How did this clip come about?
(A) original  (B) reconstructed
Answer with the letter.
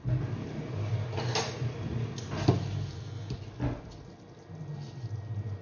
A